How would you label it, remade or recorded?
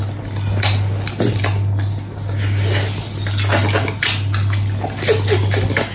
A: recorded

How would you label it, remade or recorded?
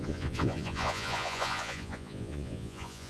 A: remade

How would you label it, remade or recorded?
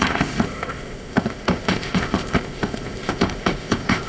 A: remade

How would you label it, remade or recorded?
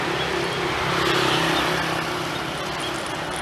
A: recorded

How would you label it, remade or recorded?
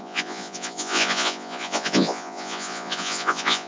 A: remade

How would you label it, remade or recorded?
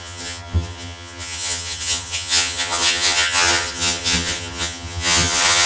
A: remade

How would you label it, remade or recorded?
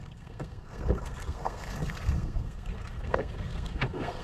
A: remade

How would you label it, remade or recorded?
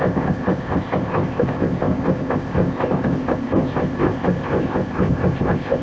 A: remade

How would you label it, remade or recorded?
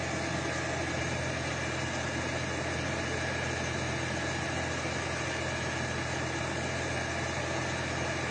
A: recorded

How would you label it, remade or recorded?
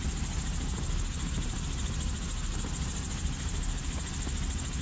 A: recorded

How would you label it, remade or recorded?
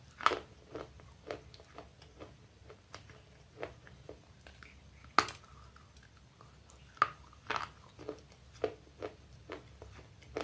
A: recorded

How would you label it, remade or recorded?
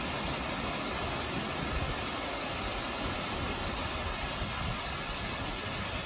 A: recorded